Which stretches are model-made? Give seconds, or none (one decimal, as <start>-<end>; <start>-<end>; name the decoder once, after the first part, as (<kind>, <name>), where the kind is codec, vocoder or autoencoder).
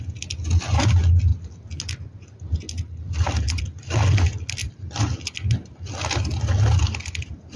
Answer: none